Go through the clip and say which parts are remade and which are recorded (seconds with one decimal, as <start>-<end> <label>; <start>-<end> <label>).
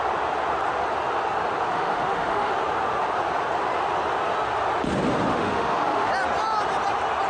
0.0-1.7 recorded; 1.7-2.5 remade; 2.5-5.3 recorded; 5.3-6.1 remade; 6.1-7.3 recorded